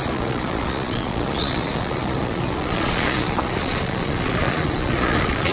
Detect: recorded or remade remade